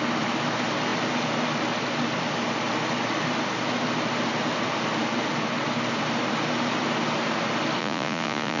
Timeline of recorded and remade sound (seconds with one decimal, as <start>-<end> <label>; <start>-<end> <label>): 0.0-7.8 recorded; 7.8-8.6 remade